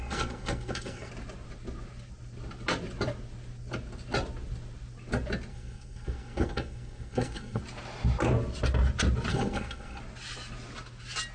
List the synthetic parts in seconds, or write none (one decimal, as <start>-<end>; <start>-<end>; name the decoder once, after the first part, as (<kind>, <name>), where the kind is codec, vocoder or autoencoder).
0.0-1.1 (codec, SNAC); 5.5-7.6; 9.3-10.0